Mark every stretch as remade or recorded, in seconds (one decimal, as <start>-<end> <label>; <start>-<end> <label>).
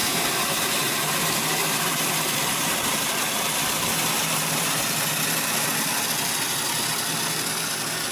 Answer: 0.0-4.8 remade; 4.8-8.1 recorded